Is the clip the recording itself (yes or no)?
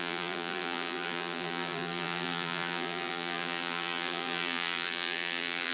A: no